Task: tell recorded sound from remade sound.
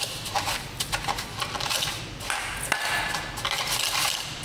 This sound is recorded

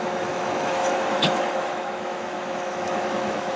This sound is remade